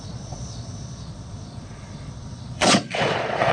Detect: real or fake fake